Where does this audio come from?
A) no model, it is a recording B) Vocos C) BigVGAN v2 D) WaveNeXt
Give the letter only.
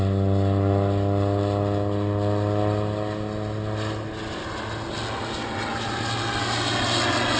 A